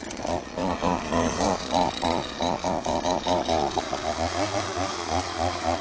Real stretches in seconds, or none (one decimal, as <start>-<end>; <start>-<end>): none